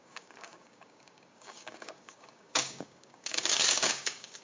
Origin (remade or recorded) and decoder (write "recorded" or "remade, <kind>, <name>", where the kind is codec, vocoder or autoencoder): remade, codec, DAC